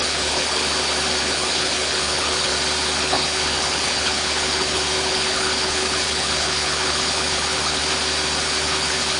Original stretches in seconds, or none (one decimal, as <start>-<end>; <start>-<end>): 0.6-1.2; 2.5-3.0; 7.8-8.4